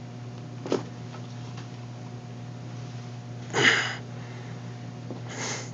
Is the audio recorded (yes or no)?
yes